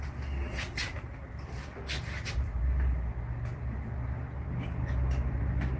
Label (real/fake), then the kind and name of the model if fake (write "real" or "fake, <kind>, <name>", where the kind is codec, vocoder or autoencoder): real